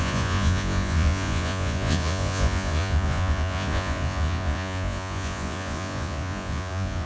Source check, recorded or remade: remade